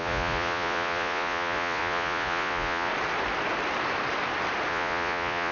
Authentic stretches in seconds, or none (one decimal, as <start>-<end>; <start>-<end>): 2.9-4.7